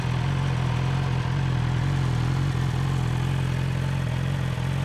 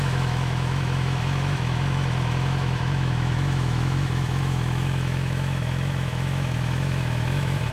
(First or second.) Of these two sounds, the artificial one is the second